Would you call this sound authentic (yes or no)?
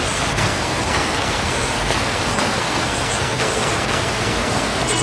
no